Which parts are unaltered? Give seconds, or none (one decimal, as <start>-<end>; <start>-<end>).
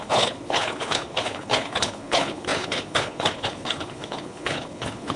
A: none